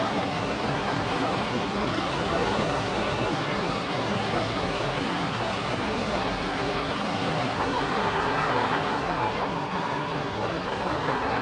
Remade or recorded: remade